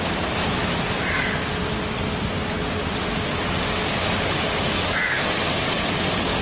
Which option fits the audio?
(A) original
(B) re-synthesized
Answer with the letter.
A